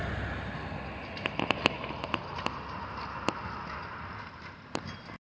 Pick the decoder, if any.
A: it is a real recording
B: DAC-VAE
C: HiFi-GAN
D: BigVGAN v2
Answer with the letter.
A